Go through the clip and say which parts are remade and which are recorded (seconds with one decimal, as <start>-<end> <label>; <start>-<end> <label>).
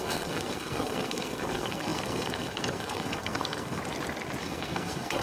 0.0-3.8 remade; 3.8-4.4 recorded; 4.4-5.2 remade